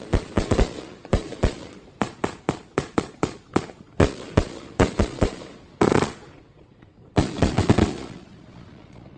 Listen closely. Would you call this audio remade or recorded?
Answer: remade